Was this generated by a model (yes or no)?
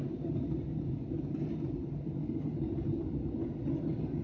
no